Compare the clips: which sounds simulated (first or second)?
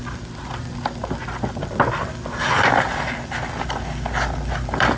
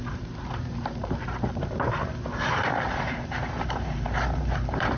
second